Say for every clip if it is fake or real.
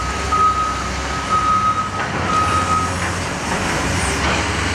real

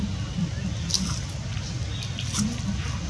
real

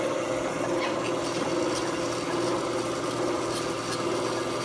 real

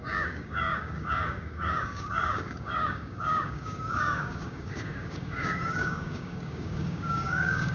fake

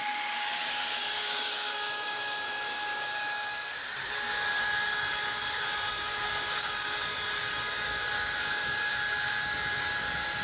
fake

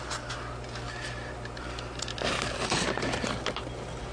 real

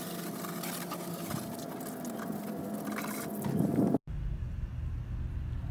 real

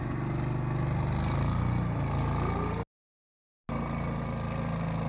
real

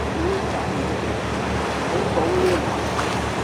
real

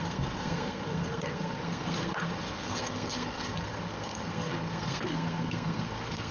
fake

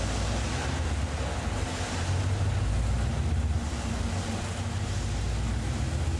real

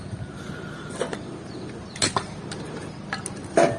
real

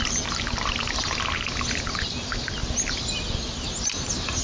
real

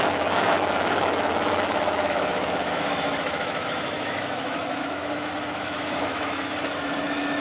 fake